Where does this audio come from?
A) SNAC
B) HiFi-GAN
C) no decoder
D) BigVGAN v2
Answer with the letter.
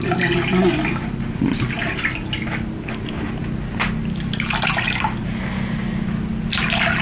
C